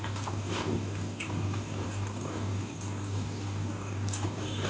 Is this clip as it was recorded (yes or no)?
no